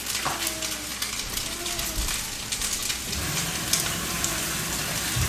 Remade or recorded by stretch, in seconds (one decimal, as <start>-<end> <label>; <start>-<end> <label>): 0.0-5.3 recorded